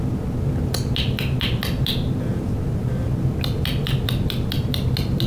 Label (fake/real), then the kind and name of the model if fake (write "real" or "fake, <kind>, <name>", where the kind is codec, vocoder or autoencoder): real